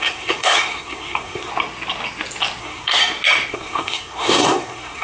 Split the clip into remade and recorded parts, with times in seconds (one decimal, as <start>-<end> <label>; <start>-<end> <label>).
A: 0.0-1.5 remade; 1.5-2.6 recorded; 2.6-3.0 remade; 3.0-3.5 recorded; 3.5-5.0 remade